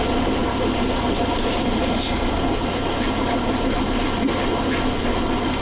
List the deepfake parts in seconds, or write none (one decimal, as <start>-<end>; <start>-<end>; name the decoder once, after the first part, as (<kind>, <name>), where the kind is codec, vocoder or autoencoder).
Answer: none